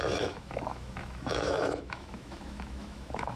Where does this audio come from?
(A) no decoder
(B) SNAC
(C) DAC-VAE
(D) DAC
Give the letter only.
C